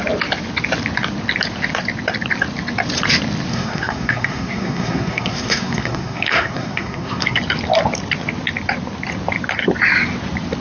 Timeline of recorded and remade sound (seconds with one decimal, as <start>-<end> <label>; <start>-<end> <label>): 0.0-3.5 recorded; 3.5-7.4 remade; 7.4-10.6 recorded